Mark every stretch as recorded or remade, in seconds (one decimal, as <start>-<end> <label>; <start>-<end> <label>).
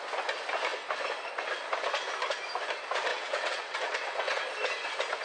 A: 0.0-3.1 recorded; 3.1-4.4 remade; 4.4-5.2 recorded